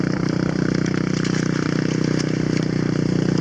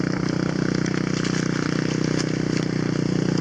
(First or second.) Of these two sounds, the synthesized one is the first